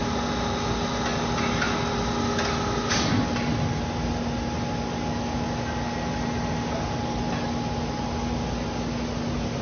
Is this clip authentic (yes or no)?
yes